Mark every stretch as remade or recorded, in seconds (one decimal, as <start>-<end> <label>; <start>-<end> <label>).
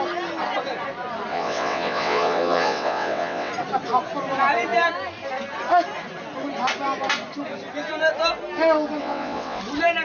0.0-1.3 recorded; 1.3-3.5 remade; 3.5-9.0 recorded; 9.0-9.6 remade; 9.6-10.0 recorded